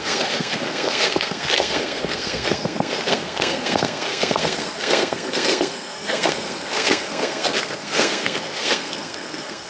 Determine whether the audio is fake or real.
fake